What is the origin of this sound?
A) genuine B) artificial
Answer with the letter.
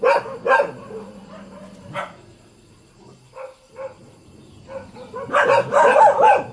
A